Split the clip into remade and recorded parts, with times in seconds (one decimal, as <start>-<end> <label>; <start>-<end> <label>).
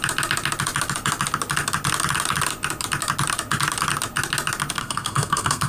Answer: 0.0-4.8 recorded; 4.8-5.7 remade